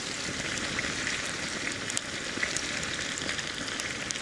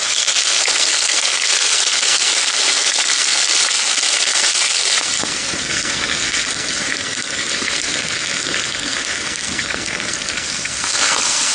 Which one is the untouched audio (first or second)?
first